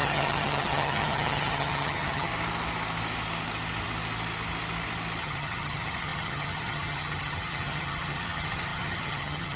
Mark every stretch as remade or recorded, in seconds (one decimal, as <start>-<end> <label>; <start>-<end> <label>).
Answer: 0.0-2.3 remade; 2.3-5.2 recorded; 5.2-9.6 remade